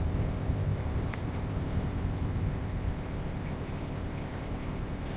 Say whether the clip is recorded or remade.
remade